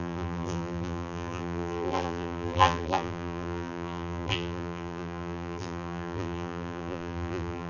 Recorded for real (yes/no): no